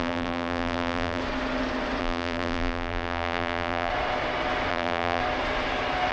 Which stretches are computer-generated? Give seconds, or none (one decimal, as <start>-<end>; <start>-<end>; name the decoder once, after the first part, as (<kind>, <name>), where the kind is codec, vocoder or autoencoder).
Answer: 0.0-1.2 (vocoder, BigVGAN v2); 2.0-3.9; 4.7-5.2